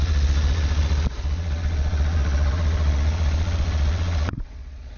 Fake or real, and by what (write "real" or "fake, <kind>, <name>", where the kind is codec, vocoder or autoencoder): fake, vocoder, Vocos